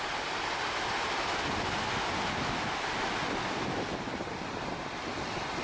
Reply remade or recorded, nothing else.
recorded